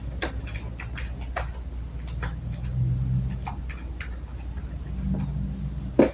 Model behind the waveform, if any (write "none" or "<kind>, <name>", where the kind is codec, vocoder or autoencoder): none